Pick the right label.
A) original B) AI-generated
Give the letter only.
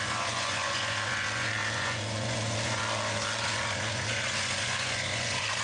B